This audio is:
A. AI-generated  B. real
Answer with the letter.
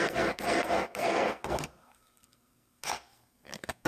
A